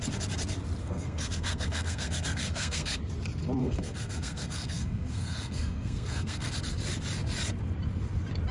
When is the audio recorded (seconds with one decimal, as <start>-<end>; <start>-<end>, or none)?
0.0-0.8; 3.0-3.6; 6.5-8.5